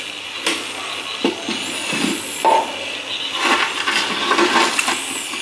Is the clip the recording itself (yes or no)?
yes